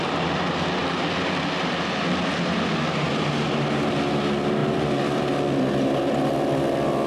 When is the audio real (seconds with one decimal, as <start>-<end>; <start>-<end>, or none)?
0.0-7.1